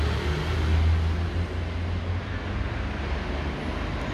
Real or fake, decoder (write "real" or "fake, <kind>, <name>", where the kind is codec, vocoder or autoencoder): real